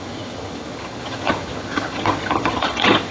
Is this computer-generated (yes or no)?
yes